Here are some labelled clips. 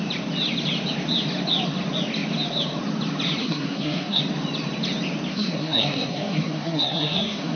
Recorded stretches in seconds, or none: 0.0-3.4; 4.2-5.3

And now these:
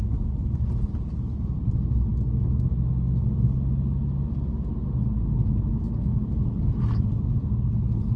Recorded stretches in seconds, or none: 0.0-8.2

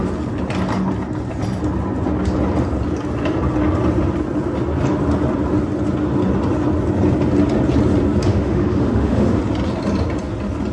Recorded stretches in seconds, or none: 0.0-8.3; 9.4-10.7

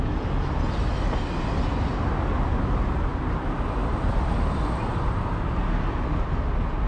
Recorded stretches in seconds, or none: 0.0-3.1; 5.1-6.9

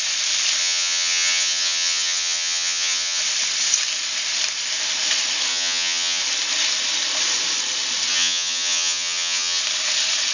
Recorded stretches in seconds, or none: 0.0-0.6; 3.2-5.5; 6.2-8.1; 9.6-10.3

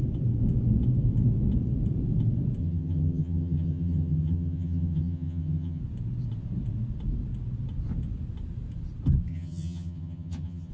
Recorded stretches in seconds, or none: 0.0-2.6; 5.8-9.3

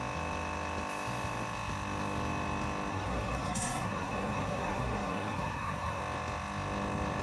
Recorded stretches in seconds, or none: 0.0-2.9; 6.0-7.2

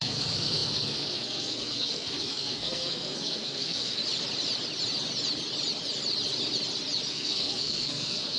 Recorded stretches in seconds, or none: 4.0-7.1